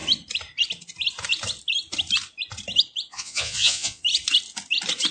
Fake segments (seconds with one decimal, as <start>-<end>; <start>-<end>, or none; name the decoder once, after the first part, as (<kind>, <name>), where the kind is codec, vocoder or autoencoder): 3.1-4.0 (vocoder, Vocos)